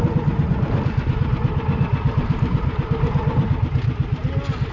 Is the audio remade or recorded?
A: recorded